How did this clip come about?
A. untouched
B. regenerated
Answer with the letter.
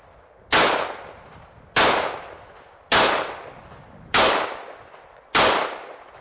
A